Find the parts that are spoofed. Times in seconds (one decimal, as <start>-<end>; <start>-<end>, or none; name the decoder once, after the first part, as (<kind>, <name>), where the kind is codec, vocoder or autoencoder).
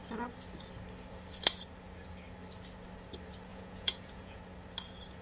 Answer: 3.5-4.4 (vocoder, Vocos)